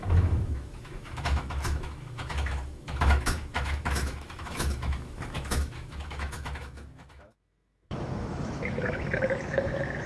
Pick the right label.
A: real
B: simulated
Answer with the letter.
B